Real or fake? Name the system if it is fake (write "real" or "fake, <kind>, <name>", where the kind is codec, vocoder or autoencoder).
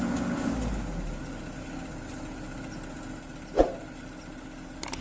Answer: real